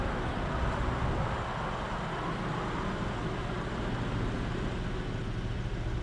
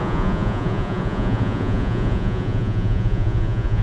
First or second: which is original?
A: first